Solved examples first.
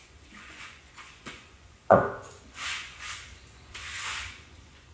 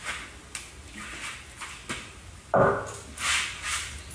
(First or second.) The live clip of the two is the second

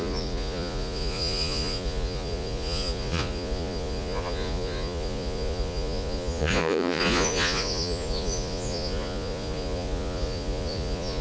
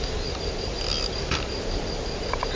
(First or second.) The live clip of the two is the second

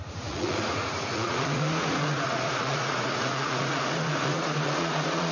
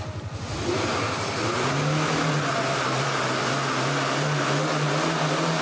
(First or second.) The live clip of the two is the second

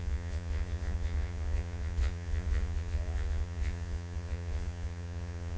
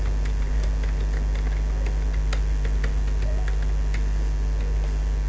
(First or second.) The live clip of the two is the second